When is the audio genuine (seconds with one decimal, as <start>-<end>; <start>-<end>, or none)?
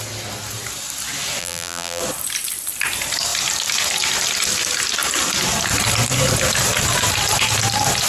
0.0-1.4; 2.0-8.1